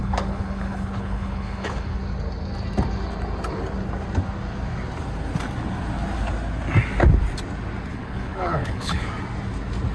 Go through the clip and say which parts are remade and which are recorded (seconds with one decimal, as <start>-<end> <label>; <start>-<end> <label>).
0.0-2.0 remade; 2.0-7.9 recorded; 7.9-9.1 remade; 9.1-9.9 recorded